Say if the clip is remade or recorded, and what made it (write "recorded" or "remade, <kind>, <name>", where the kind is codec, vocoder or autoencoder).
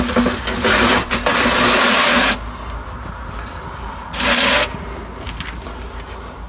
recorded